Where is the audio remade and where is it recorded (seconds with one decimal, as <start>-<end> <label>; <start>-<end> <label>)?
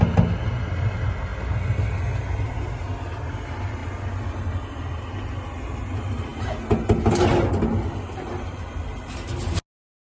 0.0-10.2 recorded